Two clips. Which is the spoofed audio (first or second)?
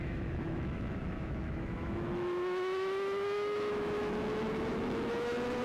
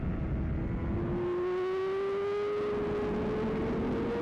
first